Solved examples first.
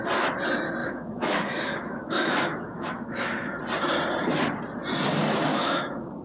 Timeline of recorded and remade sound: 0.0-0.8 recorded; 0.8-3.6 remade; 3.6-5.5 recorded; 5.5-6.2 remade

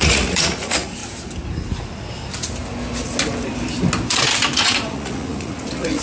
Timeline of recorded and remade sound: 0.0-1.0 remade; 1.0-4.6 recorded; 4.6-6.0 remade

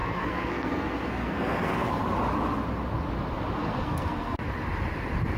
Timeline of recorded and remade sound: 0.0-2.0 remade; 2.0-3.6 recorded; 3.6-4.4 remade; 4.4-5.4 recorded

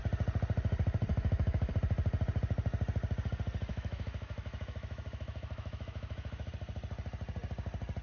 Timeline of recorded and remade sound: 0.0-1.1 recorded; 1.1-1.7 remade; 1.7-3.7 recorded; 3.7-6.5 remade; 6.5-8.0 recorded

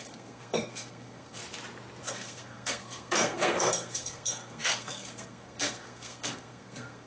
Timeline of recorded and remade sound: 0.0-1.4 remade; 1.4-2.0 recorded; 2.0-7.1 remade